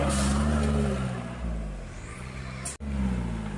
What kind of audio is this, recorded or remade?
recorded